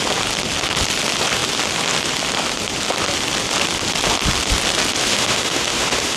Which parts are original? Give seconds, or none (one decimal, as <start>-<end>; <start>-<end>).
0.0-5.1